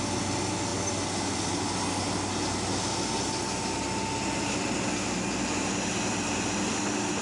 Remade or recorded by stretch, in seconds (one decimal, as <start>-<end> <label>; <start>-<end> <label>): 0.0-7.2 recorded